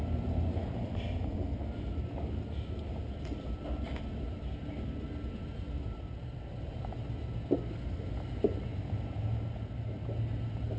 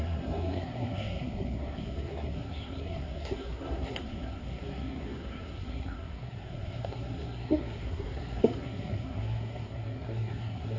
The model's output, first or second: second